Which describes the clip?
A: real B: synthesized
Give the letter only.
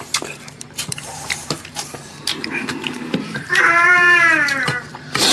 B